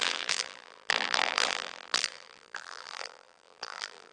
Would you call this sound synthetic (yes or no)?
yes